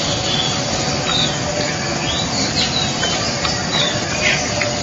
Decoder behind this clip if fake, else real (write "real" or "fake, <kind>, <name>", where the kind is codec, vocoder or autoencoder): real